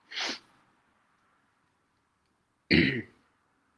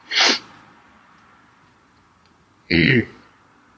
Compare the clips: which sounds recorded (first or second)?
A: first